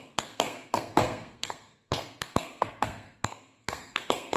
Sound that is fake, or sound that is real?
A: fake